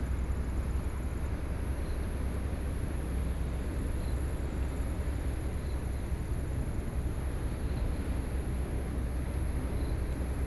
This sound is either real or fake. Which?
real